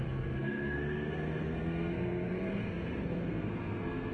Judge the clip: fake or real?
fake